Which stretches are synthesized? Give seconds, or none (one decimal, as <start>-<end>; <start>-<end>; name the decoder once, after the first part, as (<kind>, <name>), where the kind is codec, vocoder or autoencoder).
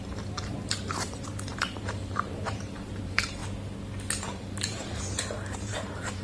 0.0-3.4 (vocoder, BigVGAN v2); 4.2-6.2